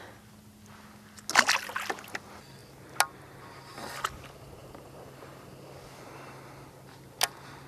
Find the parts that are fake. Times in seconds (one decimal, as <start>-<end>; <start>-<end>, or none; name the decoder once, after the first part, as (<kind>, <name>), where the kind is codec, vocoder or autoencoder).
4.6-5.5 (vocoder, BigVGAN v2)